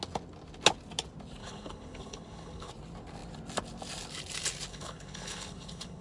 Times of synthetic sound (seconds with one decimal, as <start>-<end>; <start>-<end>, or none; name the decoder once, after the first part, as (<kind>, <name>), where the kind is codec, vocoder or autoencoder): 1.4-2.7 (codec, HILCodec); 4.7-6.0